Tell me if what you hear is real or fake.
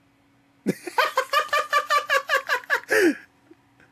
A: real